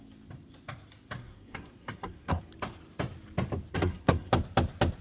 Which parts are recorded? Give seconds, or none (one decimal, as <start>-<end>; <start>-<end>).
0.0-1.2; 2.4-3.7; 4.3-5.0